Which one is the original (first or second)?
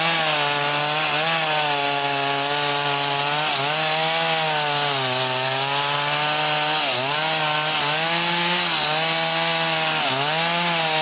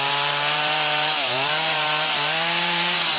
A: first